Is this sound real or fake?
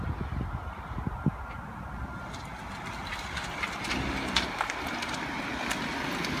real